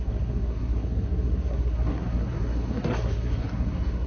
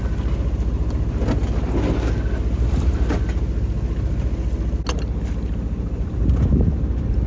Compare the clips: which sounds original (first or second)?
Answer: second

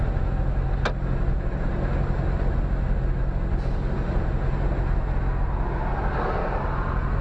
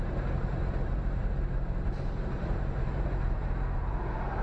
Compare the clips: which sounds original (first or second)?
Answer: first